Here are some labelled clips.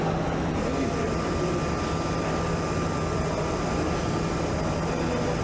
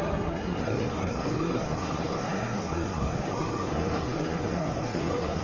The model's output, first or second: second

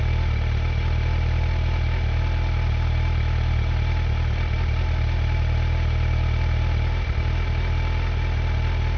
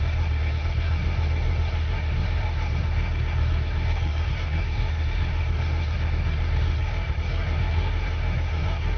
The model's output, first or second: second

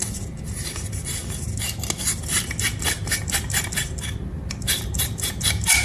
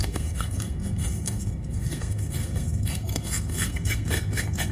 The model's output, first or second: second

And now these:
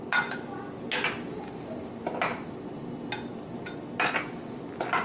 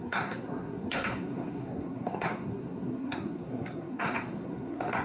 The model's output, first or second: second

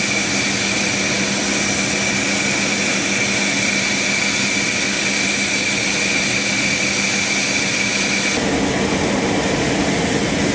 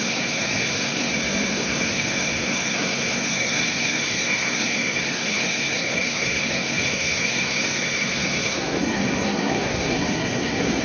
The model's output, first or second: second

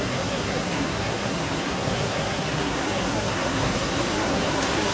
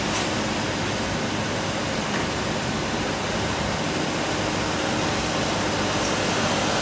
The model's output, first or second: first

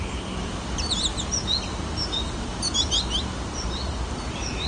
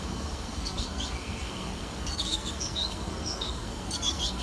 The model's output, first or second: second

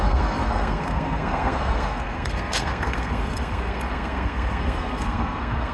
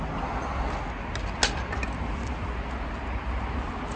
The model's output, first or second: first